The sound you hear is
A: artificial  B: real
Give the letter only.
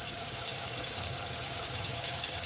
A